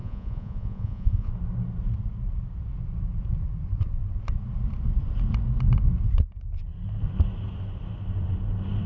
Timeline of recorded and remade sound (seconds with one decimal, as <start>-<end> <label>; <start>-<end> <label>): 0.0-1.3 remade; 1.3-8.9 recorded